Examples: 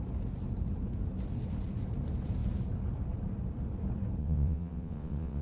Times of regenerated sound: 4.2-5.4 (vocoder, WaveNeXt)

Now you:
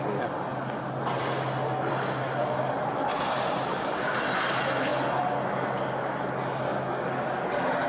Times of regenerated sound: 3.7-4.2 (codec, DAC)